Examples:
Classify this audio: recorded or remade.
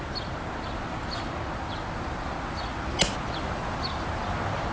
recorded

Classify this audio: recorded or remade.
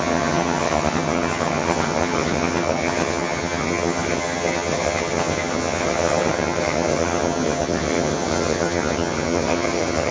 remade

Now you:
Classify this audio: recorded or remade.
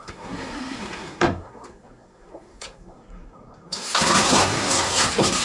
remade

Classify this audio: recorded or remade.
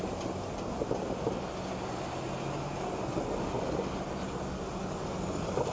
recorded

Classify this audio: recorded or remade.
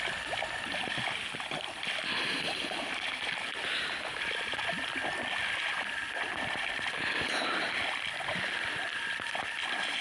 recorded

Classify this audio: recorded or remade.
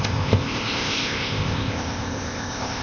remade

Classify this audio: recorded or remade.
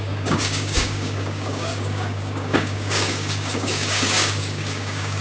remade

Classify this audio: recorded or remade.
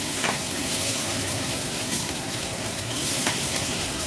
remade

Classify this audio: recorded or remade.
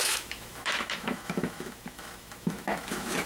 remade